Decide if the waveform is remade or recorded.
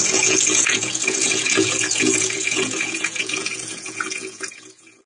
remade